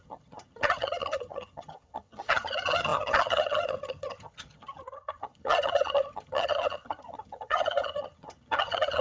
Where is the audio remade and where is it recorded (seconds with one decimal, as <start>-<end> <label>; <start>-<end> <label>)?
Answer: 0.0-9.0 remade